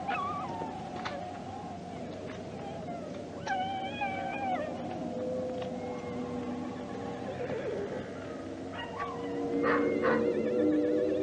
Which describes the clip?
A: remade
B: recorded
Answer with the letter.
B